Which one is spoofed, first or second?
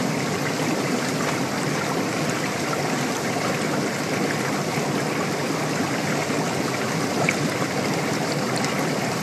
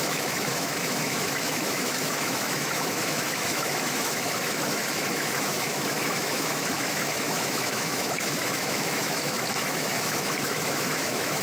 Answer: second